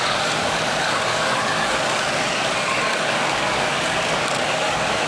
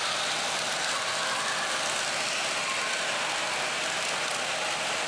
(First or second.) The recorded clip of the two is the second